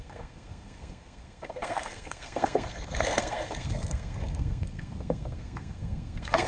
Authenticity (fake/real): fake